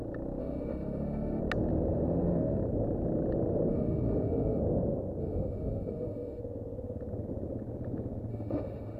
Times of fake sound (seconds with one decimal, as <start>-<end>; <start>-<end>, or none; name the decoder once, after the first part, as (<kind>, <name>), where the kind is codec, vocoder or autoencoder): 0.4-1.4 (autoencoder, DAC-VAE); 3.7-4.6; 5.2-6.4; 8.3-9.0